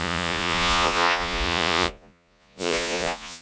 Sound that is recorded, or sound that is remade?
remade